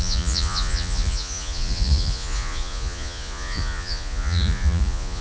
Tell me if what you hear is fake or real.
fake